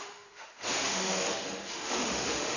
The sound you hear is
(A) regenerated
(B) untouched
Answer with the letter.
A